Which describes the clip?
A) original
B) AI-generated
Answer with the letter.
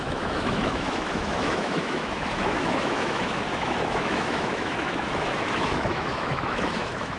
B